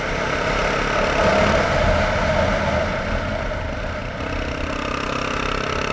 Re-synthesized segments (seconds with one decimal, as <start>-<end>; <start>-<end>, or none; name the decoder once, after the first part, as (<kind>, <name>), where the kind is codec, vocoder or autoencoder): none